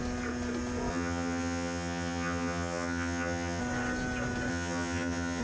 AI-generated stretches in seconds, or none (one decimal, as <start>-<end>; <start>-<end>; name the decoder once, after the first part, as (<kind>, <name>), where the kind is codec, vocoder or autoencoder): 0.9-3.6 (vocoder, HiFi-GAN); 4.5-5.4